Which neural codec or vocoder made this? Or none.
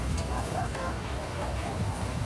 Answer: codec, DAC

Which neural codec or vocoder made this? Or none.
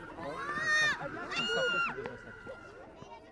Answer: none